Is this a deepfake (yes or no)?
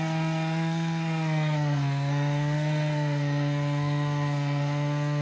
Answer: yes